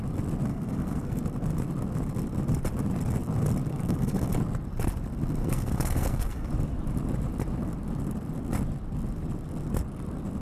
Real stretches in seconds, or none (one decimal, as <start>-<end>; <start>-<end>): 0.0-0.5; 1.2-3.7; 4.3-5.4; 6.5-10.4